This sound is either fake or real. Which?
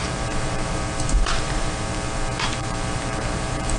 fake